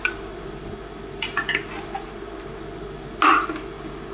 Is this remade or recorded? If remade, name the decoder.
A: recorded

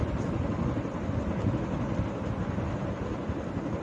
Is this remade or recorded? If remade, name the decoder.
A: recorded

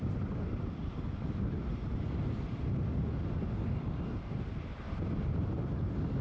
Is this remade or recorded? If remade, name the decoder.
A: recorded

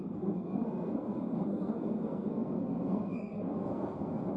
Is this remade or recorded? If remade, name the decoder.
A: remade, codec, SNAC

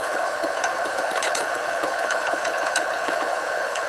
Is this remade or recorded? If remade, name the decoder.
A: remade, codec, HILCodec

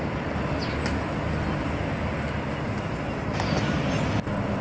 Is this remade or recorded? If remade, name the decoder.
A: recorded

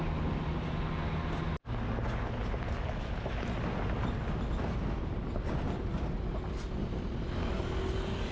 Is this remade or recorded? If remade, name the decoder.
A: recorded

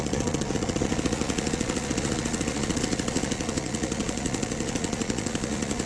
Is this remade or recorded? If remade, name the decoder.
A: remade, vocoder, Vocos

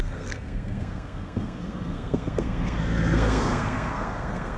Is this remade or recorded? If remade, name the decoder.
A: remade, codec, SNAC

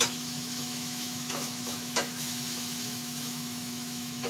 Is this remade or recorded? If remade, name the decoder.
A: remade, autoencoder, DAC-VAE